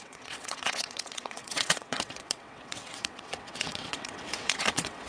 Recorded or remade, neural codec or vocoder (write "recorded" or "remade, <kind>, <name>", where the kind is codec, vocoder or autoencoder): remade, vocoder, WaveNeXt